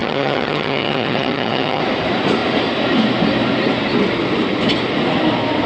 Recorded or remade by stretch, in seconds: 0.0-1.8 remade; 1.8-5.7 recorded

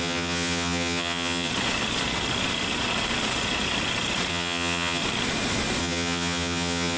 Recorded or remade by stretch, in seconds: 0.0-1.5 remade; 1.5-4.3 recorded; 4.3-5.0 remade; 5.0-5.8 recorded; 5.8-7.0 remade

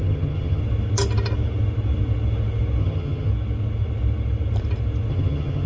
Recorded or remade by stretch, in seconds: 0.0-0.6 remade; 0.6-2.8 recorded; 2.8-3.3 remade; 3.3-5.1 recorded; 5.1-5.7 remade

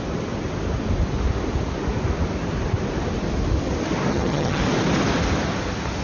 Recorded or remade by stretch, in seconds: 0.0-4.1 recorded; 4.1-4.6 remade; 4.6-6.0 recorded